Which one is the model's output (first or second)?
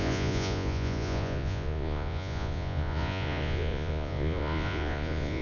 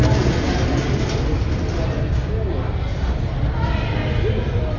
first